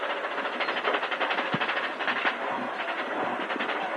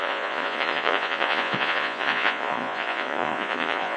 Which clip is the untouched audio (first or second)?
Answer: first